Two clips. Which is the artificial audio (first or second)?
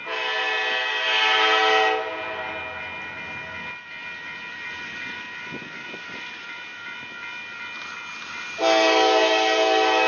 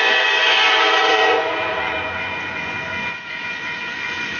second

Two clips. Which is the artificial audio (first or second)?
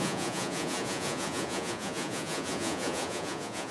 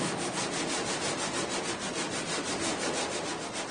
first